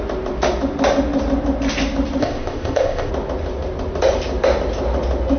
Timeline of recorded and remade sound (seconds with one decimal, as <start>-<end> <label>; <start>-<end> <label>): 0.0-2.2 recorded; 2.2-3.1 remade; 3.1-5.4 recorded